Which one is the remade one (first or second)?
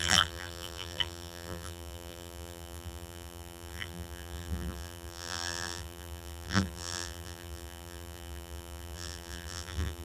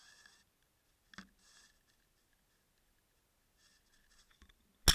first